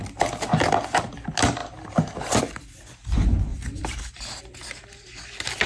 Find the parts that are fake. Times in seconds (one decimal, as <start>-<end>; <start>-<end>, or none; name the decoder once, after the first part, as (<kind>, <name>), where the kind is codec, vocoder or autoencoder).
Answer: 3.5-4.4 (vocoder, BigVGAN v2)